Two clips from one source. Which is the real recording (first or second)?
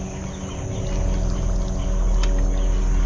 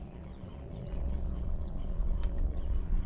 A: first